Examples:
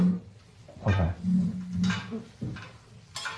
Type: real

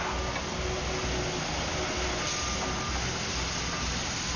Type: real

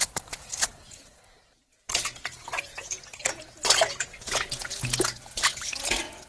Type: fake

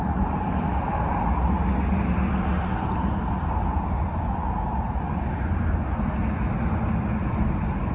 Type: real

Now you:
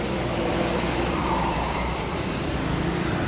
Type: fake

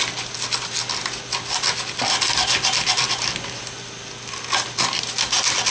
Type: real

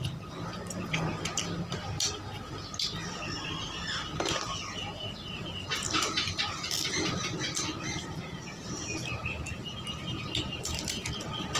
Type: real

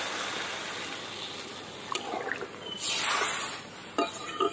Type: real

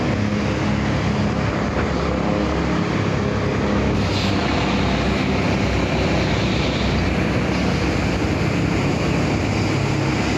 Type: real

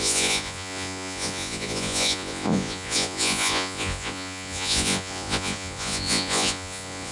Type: fake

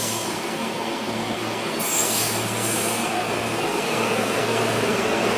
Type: fake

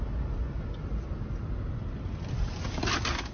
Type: real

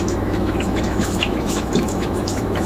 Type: fake